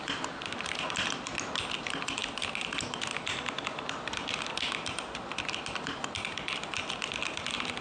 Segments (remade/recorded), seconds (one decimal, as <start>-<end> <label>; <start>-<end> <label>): 0.0-7.8 recorded